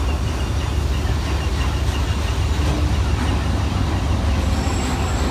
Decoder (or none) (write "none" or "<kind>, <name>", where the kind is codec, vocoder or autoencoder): none